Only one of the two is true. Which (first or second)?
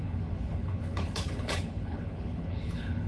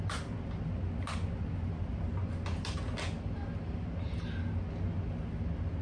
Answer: second